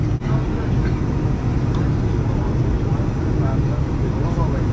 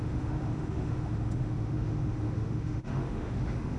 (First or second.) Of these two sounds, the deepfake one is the second